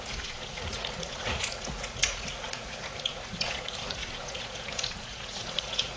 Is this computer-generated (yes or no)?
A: yes